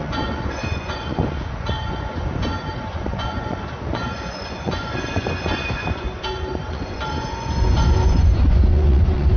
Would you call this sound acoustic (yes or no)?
no